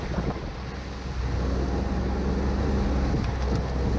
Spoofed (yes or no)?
no